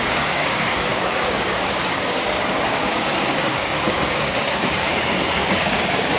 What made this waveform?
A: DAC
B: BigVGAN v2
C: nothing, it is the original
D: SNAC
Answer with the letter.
A